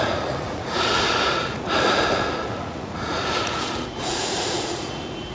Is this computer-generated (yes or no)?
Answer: yes